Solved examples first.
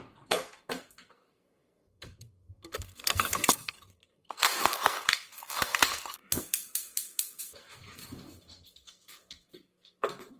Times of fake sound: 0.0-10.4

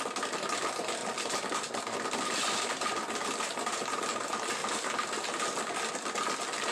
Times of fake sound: none

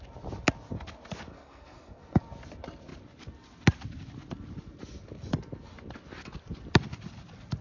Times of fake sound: 1.3-2.2

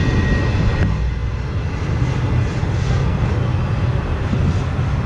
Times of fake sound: 2.6-3.3

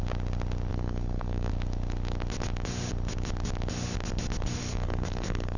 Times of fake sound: 0.7-1.5; 4.6-5.6

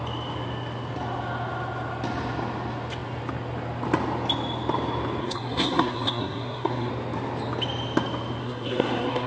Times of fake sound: 5.2-6.9; 8.4-9.3

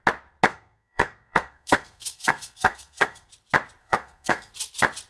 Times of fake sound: 0.5-3.3; 3.8-4.5

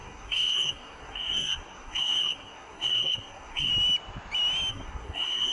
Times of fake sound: 0.0-3.7; 4.7-5.5